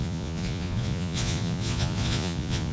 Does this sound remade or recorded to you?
remade